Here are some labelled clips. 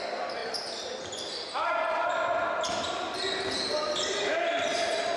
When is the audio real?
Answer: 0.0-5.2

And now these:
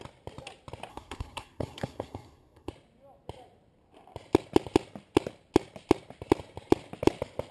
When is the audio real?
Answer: 0.0-0.9; 2.7-7.5